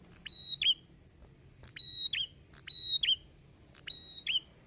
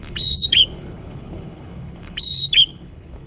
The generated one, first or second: second